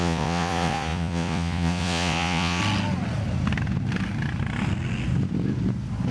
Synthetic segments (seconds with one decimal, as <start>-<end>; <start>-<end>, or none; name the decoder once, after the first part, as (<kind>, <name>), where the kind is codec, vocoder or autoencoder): 0.0-2.6 (vocoder, Vocos)